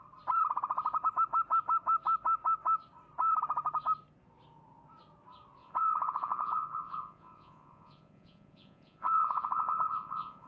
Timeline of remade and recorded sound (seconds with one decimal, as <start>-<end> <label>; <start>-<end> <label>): 0.0-5.6 recorded; 5.6-10.5 remade